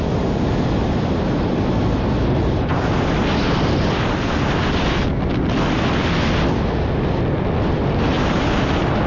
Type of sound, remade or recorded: recorded